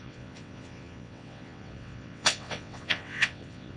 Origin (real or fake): fake